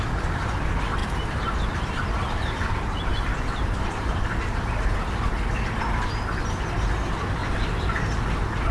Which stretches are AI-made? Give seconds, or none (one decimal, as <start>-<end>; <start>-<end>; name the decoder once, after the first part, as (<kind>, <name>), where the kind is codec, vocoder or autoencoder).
1.0-4.3 (vocoder, BigVGAN v2); 7.4-7.9